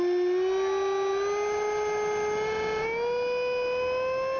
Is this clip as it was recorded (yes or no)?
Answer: yes